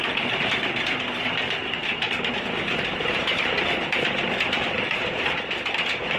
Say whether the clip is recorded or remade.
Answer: recorded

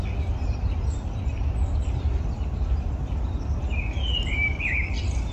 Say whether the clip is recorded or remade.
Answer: remade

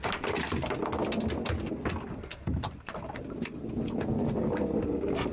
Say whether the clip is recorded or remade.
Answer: recorded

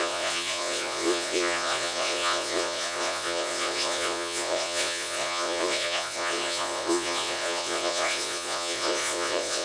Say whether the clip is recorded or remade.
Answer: remade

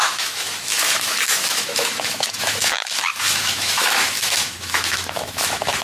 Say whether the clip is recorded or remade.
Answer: remade